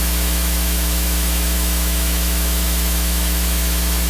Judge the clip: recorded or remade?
remade